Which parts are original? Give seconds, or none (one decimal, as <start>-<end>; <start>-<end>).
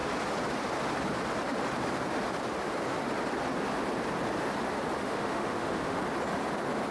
0.0-5.0; 6.0-6.9